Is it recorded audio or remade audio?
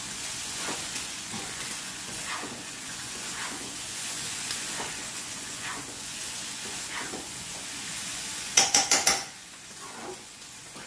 remade